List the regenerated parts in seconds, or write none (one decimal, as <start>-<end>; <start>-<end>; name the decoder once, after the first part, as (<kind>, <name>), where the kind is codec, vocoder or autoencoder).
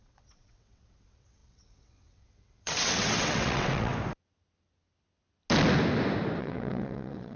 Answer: 0.0-3.9 (vocoder, WaveNeXt); 6.4-7.4